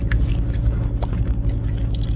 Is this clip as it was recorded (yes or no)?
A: yes